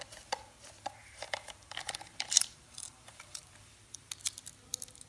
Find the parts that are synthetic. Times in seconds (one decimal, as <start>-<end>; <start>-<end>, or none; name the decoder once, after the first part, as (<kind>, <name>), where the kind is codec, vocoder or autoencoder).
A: 1.0-4.1 (vocoder, BigVGAN v2)